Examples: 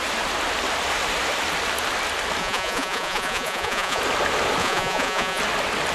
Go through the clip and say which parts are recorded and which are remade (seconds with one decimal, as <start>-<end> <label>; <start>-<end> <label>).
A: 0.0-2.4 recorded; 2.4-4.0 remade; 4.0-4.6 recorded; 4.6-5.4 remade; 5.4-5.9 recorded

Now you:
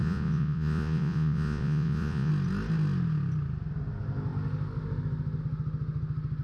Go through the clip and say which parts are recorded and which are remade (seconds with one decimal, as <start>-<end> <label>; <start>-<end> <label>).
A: 0.0-2.3 remade; 2.3-6.4 recorded

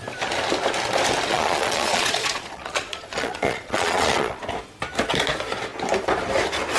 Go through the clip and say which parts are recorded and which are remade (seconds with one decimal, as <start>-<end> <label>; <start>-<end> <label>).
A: 0.0-1.3 recorded; 1.3-4.4 remade; 4.4-6.8 recorded

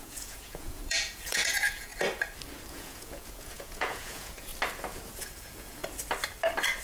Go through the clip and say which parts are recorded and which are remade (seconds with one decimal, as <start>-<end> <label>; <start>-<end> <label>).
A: 0.0-1.9 remade; 1.9-2.7 recorded; 2.7-4.5 remade; 4.5-5.2 recorded; 5.2-5.8 remade; 5.8-6.8 recorded

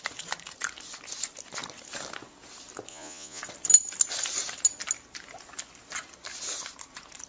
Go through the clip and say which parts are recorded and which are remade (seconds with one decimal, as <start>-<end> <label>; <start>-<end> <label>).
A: 0.0-2.9 recorded; 2.9-3.4 remade; 3.4-7.3 recorded

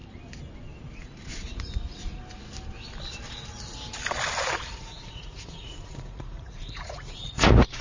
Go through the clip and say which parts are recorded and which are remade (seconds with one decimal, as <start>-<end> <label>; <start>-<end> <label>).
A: 0.0-4.7 recorded; 4.7-7.8 remade

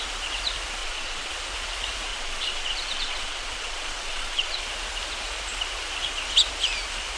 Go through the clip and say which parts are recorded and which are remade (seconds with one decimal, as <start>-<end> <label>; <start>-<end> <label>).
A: 0.0-0.8 recorded; 0.8-1.3 remade; 1.3-2.1 recorded; 2.1-4.6 remade; 4.6-7.2 recorded

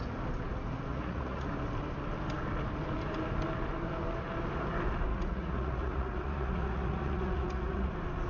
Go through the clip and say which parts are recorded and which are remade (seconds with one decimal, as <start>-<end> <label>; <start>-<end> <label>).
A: 0.0-0.9 recorded; 0.9-1.5 remade; 1.5-5.1 recorded; 5.1-7.9 remade; 7.9-8.3 recorded